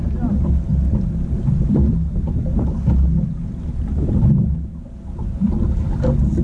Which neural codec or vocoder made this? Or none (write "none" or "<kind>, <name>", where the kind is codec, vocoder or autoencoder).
none